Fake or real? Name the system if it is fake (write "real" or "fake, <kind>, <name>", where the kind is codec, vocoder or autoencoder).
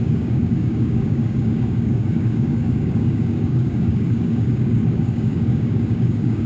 fake, codec, DAC